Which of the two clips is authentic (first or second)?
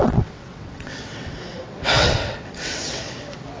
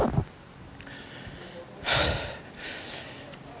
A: second